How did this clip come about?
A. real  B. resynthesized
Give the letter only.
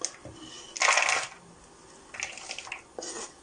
A